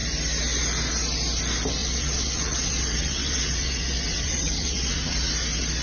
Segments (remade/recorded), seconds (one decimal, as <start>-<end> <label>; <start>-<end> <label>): 0.0-1.8 recorded; 1.8-5.3 remade; 5.3-5.8 recorded